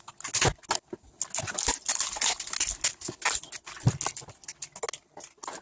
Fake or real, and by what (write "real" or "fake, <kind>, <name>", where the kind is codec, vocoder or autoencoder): real